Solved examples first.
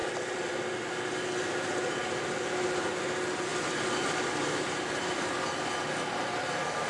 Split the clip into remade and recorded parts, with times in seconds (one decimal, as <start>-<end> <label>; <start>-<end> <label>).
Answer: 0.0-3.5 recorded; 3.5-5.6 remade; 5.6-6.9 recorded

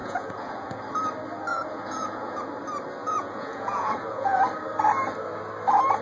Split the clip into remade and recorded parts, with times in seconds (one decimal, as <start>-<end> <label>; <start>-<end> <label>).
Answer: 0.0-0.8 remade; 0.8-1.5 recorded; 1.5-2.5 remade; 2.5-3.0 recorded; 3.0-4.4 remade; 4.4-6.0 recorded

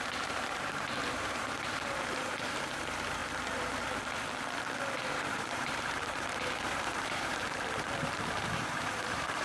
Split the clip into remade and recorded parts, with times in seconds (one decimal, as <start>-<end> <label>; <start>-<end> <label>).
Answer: 0.0-3.2 remade; 3.2-5.0 recorded; 5.0-9.4 remade

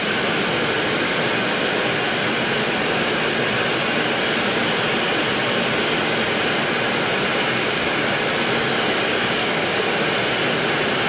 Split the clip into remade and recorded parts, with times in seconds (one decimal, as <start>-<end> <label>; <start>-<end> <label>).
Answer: 0.0-7.3 recorded; 7.3-7.9 remade; 7.9-9.1 recorded; 9.1-9.8 remade; 9.8-11.1 recorded

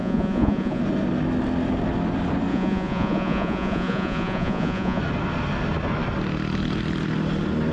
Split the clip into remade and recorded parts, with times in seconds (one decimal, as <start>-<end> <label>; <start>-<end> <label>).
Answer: 0.0-0.8 remade; 0.8-2.5 recorded; 2.5-5.0 remade; 5.0-7.7 recorded

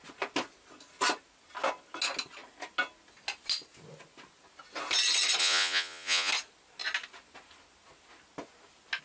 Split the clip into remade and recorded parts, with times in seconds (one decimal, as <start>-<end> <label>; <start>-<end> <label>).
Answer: 0.0-5.4 recorded; 5.4-6.3 remade; 6.3-9.0 recorded